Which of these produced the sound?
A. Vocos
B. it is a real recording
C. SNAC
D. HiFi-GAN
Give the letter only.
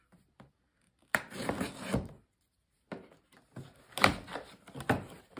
B